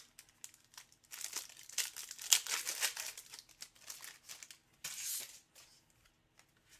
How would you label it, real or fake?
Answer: real